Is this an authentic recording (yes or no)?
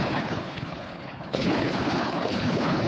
no